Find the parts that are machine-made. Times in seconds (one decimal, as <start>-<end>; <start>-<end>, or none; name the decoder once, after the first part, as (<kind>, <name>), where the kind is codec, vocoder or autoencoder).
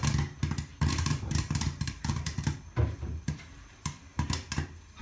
0.7-3.7 (vocoder, BigVGAN v2)